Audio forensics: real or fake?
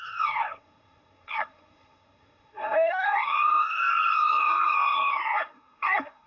fake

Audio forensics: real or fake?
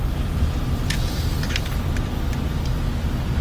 real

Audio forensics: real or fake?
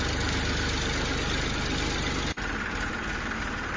real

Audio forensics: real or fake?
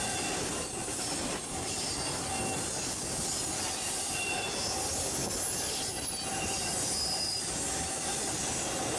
real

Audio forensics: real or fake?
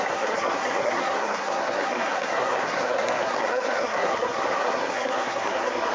fake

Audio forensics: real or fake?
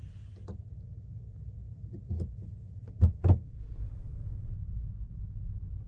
real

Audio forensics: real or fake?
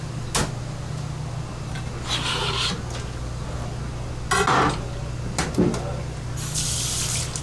real